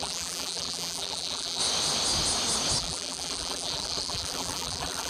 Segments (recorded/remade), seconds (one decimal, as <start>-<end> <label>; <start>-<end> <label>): 0.0-1.6 remade; 1.6-2.8 recorded; 2.8-5.1 remade